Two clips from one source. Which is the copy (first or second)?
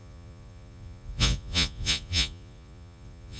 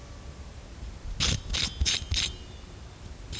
first